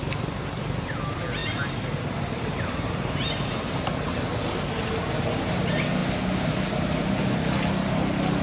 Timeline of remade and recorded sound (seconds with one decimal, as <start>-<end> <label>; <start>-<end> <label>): 0.0-1.4 recorded; 1.4-3.6 remade; 3.6-8.4 recorded